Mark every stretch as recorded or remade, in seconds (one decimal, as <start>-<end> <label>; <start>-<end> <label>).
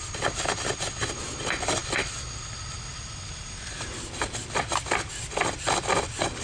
0.0-6.4 recorded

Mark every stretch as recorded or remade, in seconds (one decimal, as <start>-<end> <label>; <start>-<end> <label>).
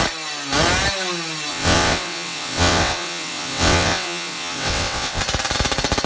0.0-1.5 recorded; 1.5-5.2 remade; 5.2-6.1 recorded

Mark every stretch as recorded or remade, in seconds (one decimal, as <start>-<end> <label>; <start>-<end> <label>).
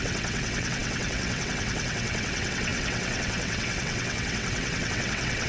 0.0-5.5 remade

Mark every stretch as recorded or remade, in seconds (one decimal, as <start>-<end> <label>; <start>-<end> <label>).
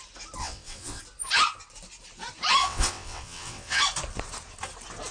0.0-0.4 recorded; 0.4-1.0 remade; 1.0-2.6 recorded; 2.6-3.8 remade; 3.8-5.1 recorded